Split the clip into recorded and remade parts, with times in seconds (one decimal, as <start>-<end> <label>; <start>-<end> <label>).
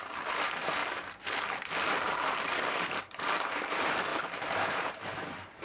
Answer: 0.0-0.8 remade; 0.8-2.7 recorded; 2.7-5.6 remade